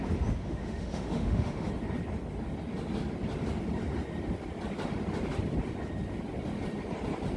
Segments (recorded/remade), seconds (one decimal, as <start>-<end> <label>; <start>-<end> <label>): 0.0-0.4 recorded; 0.4-1.7 remade; 1.7-7.4 recorded